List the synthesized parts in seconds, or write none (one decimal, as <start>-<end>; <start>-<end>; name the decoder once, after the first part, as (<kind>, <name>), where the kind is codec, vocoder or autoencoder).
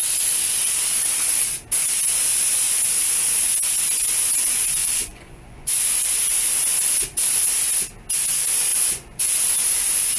4.8-5.8 (vocoder, Vocos); 8.7-9.4